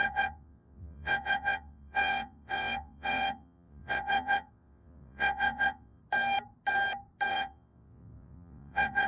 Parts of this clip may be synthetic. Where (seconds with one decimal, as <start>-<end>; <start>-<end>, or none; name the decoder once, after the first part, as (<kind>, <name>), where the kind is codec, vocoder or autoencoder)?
0.0-6.0 (vocoder, WaveNeXt); 7.3-9.1